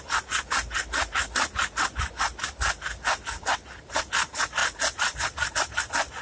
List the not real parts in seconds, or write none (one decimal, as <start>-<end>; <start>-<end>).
none